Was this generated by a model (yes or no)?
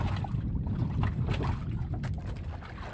yes